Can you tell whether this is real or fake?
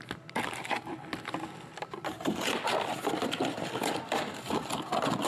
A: real